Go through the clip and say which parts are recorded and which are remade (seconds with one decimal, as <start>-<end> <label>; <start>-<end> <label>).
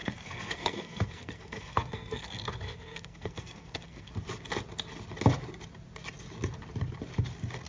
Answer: 0.0-4.1 remade; 4.1-7.7 recorded